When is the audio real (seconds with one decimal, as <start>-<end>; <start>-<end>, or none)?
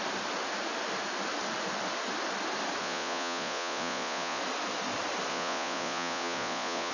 0.0-2.8; 4.4-5.3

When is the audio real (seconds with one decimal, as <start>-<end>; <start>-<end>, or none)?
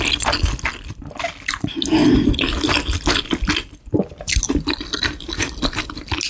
0.0-6.3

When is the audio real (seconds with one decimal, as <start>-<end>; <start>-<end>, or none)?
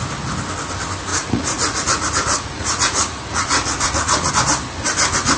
0.0-1.1; 4.3-5.4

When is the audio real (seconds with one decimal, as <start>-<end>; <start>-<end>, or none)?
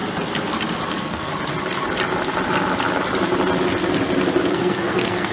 0.0-0.9; 1.3-4.5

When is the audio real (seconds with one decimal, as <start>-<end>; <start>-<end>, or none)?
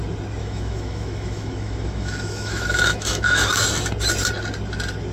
0.0-0.4; 3.5-5.1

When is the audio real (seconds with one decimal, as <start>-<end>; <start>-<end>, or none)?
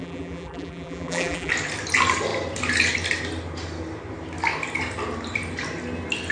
1.5-6.3